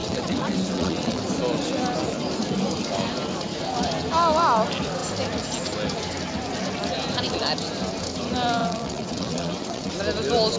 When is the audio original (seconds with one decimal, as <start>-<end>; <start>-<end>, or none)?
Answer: 1.2-8.6; 9.9-10.6